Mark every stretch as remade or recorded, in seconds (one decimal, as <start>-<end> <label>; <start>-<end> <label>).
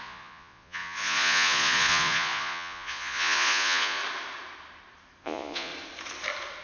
0.0-4.0 remade; 4.0-5.2 recorded; 5.2-5.7 remade; 5.7-6.6 recorded